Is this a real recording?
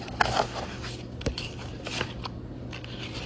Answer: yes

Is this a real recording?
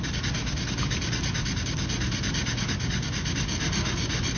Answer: yes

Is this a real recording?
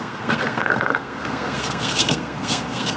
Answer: no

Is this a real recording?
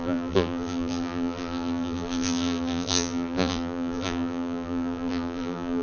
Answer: no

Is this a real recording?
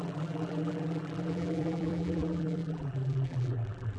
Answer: no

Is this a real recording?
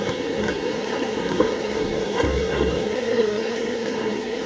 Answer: no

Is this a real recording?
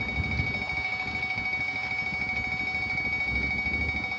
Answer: yes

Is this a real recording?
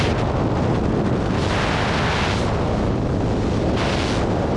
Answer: yes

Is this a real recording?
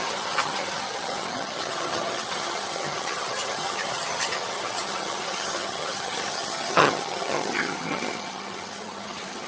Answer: no